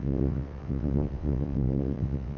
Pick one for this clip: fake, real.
fake